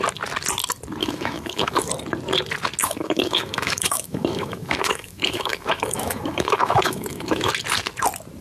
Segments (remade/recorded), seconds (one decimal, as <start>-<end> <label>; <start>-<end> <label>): 0.0-1.0 recorded; 1.0-1.9 remade; 1.9-2.8 recorded; 2.8-7.5 remade; 7.5-8.4 recorded